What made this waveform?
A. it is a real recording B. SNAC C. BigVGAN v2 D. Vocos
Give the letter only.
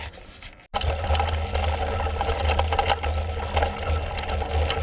A